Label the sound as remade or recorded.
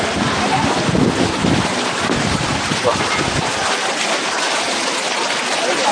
recorded